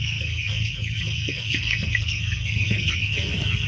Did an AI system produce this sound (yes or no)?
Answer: yes